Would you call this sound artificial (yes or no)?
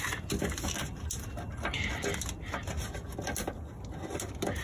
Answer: no